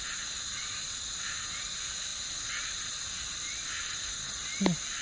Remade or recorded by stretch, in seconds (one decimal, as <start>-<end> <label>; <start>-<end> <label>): 0.0-5.0 recorded